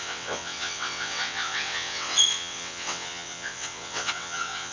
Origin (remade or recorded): remade